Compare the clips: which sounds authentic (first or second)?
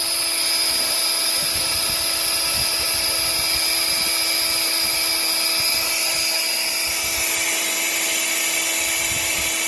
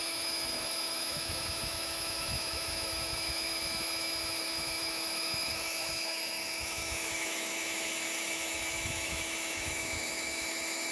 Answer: first